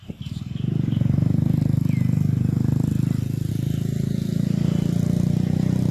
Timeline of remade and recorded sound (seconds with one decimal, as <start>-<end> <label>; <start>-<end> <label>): 0.0-5.9 recorded